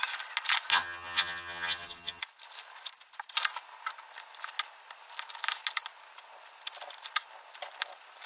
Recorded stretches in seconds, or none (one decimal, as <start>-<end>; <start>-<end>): 0.0-0.7; 2.2-8.3

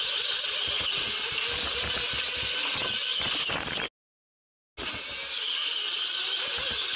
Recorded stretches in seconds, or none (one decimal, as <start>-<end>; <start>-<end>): 0.0-7.0

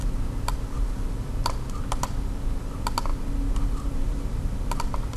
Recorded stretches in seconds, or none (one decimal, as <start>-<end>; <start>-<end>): 0.0-5.2

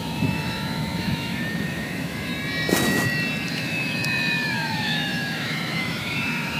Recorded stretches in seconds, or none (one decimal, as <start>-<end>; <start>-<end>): 2.3-3.5

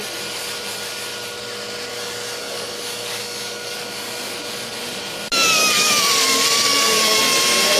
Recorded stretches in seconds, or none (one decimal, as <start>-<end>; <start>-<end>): 0.0-1.9; 4.3-5.6; 7.2-7.8